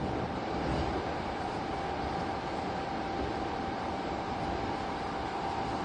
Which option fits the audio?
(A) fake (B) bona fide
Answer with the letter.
B